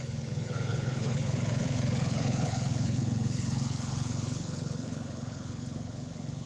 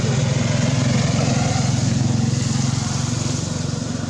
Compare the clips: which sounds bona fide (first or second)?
second